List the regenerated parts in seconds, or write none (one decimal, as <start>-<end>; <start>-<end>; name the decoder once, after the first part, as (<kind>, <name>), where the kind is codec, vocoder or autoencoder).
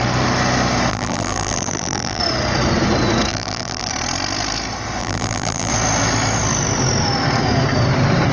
0.9-2.2 (vocoder, BigVGAN v2); 3.3-3.9; 5.0-5.7